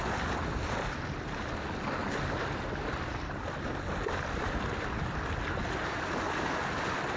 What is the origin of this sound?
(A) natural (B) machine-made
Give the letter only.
A